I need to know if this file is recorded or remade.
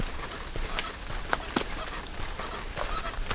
recorded